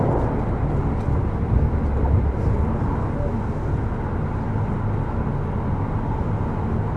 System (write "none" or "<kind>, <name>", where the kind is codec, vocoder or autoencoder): none